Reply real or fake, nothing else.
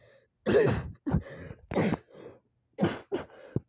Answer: real